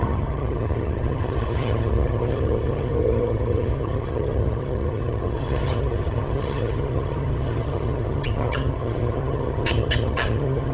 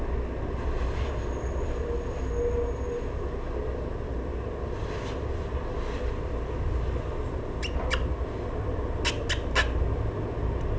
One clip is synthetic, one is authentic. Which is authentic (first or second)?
second